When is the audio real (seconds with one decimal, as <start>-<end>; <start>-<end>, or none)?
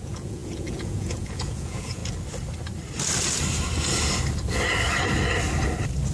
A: 2.0-6.1